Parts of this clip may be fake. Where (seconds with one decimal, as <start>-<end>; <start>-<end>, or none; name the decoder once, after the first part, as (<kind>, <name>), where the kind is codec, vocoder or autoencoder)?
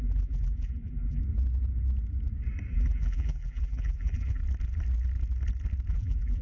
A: 0.0-1.2 (vocoder, BigVGAN v2); 2.7-4.4; 5.9-6.4